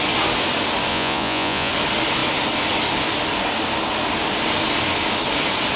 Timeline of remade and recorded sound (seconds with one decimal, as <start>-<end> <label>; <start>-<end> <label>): 0.0-0.9 recorded; 0.9-1.7 remade; 1.7-5.8 recorded